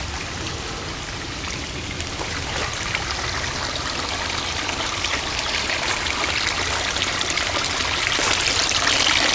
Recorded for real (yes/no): yes